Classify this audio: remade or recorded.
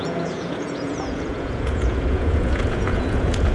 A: remade